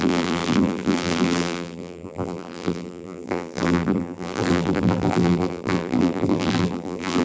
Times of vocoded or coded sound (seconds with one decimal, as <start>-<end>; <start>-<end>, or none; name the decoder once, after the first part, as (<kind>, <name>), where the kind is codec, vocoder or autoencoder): 0.0-7.2 (vocoder, BigVGAN v2)